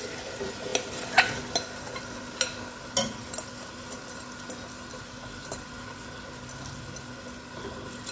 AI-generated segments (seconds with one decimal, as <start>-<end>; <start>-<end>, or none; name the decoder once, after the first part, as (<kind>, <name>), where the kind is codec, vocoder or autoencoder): none